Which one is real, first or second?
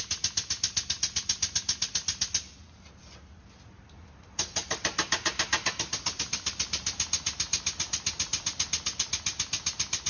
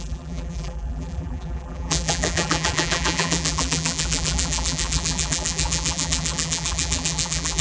first